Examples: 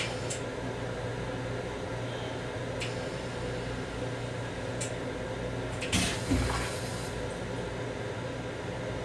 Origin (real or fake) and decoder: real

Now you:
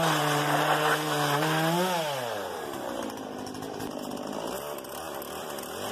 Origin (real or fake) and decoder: real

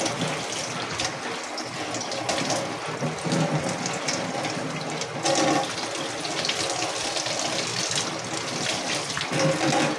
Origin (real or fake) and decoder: real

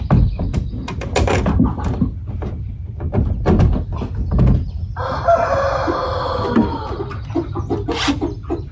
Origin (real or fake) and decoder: real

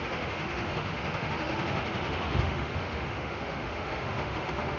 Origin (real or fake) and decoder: fake, autoencoder, DAC-VAE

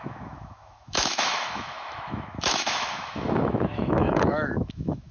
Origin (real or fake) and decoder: fake, autoencoder, DAC-VAE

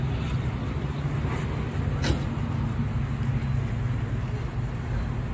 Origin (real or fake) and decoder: real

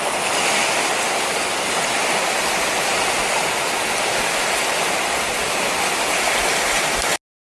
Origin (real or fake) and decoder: real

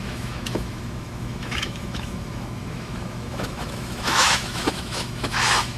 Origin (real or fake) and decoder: fake, autoencoder, DAC-VAE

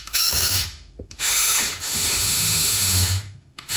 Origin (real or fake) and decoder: fake, autoencoder, DAC-VAE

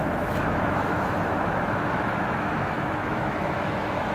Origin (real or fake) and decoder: fake, autoencoder, DAC-VAE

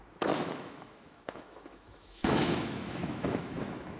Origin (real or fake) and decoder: fake, autoencoder, DAC-VAE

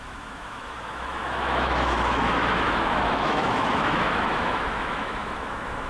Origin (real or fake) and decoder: fake, autoencoder, DAC-VAE